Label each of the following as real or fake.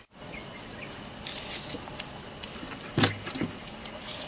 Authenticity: real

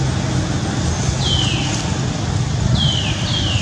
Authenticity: real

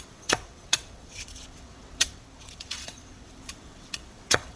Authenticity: fake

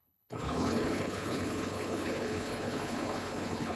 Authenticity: fake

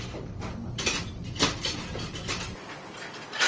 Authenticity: real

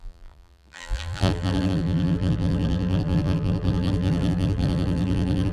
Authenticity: fake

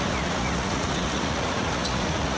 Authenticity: fake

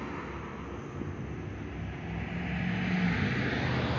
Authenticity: real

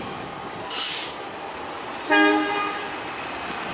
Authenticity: real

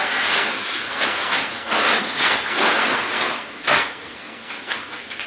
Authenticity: fake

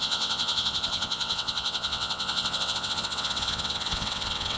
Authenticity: fake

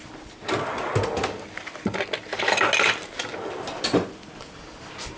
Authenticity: real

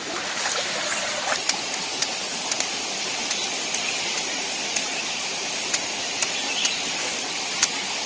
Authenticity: real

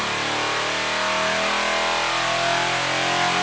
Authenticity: real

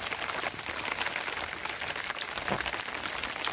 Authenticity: real